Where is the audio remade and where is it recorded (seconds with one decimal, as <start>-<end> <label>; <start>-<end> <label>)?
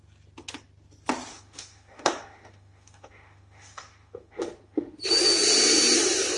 0.0-1.3 recorded; 1.3-5.0 remade; 5.0-6.4 recorded